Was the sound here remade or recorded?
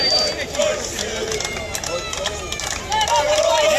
recorded